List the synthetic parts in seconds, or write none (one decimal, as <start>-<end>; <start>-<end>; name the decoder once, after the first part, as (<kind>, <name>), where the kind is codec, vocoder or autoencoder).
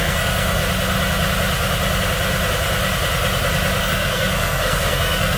0.0-0.6 (codec, SNAC); 3.8-5.4